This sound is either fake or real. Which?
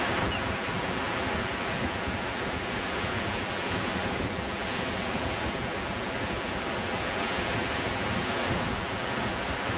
fake